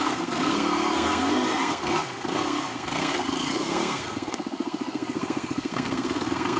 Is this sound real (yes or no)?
no